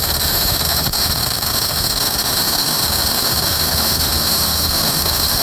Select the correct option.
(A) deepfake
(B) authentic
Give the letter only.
A